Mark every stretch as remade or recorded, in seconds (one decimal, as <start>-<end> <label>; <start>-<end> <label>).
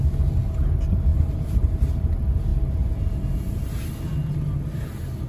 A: 0.0-1.1 recorded; 1.1-1.9 remade; 1.9-5.3 recorded